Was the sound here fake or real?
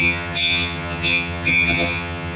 fake